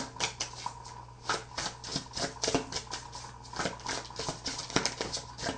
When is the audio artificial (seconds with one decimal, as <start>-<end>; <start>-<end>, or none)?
none